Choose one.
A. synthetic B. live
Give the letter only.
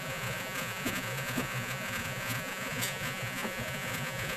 A